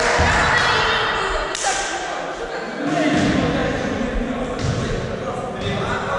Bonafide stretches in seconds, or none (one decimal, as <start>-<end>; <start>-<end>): 0.0-6.2